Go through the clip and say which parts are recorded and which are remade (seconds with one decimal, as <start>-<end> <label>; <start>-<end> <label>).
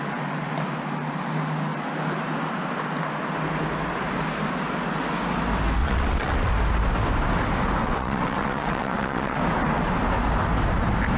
0.0-5.8 recorded; 5.8-6.5 remade; 6.5-7.8 recorded; 7.8-9.4 remade; 9.4-11.2 recorded